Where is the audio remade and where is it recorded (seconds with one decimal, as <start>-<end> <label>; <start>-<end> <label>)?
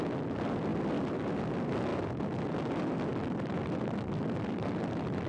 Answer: 0.0-5.3 recorded